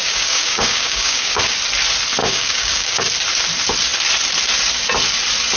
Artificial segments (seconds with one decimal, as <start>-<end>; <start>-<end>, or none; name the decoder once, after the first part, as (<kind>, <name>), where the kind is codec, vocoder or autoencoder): 0.0-1.4 (codec, DAC); 2.2-3.0